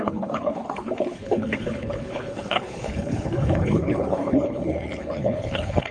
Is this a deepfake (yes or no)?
yes